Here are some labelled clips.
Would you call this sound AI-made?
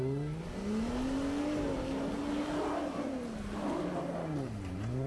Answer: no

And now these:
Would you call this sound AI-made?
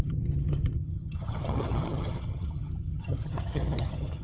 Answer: yes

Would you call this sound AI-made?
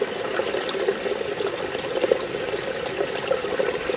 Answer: no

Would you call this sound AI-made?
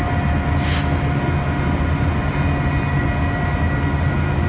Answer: no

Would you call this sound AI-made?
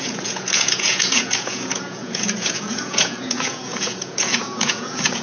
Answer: yes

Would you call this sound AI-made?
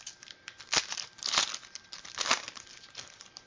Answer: no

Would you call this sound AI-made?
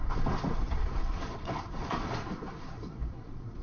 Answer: yes